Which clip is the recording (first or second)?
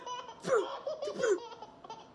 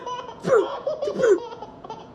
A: first